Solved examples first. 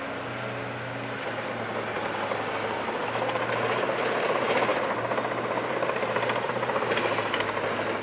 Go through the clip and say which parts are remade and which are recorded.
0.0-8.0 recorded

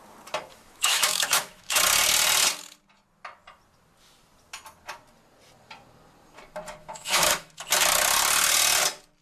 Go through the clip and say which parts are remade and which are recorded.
0.0-0.5 recorded; 0.5-1.8 remade; 1.8-6.8 recorded; 6.8-7.6 remade; 7.6-9.2 recorded